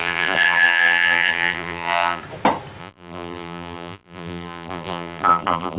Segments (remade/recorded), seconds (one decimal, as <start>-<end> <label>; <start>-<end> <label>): 0.0-2.2 remade; 2.2-2.8 recorded; 2.8-5.8 remade